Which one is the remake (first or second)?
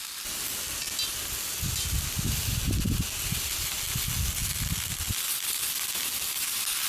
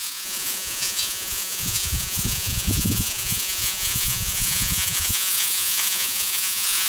second